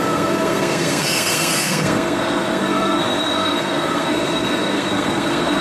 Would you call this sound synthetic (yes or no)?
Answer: yes